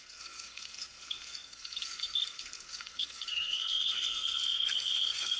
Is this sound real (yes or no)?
no